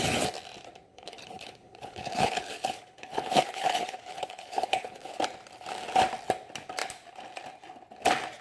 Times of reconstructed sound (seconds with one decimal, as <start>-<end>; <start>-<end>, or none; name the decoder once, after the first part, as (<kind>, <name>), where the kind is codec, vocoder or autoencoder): 0.9-5.2 (codec, HILCodec)